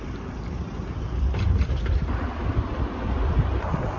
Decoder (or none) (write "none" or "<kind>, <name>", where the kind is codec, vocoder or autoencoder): vocoder, BigVGAN v2